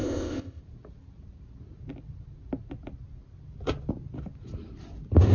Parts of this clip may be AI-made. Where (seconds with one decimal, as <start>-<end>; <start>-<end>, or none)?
0.0-0.6